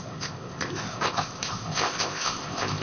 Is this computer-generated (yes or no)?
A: yes